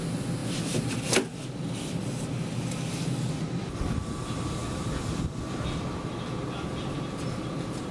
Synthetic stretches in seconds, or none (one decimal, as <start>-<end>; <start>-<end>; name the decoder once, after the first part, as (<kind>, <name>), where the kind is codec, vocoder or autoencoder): none